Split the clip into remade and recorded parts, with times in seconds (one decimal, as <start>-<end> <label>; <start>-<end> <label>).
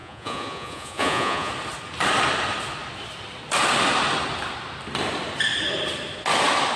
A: 0.0-1.5 remade; 1.5-6.8 recorded